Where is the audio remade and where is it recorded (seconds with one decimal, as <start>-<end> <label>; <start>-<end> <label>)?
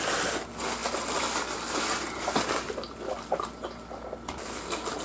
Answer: 0.0-5.0 recorded